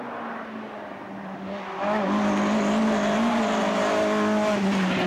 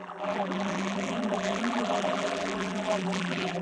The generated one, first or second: second